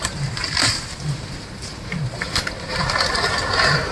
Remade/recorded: remade